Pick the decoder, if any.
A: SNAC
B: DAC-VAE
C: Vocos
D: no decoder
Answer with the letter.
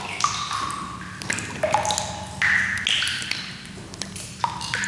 D